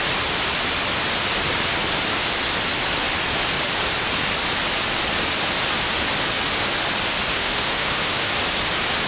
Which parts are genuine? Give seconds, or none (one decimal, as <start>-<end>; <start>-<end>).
0.0-7.3; 8.3-9.1